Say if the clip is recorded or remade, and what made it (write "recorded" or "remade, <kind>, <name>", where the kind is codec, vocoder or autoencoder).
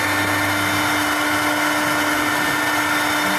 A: recorded